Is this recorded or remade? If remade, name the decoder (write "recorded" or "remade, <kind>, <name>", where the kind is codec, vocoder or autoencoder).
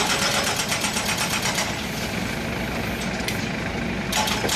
recorded